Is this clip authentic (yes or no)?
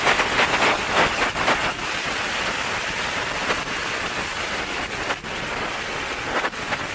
yes